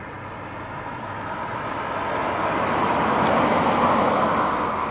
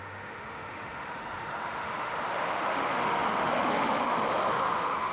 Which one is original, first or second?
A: first